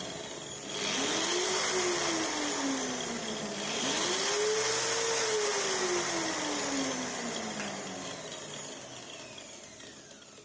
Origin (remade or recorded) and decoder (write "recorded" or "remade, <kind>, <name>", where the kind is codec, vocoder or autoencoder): recorded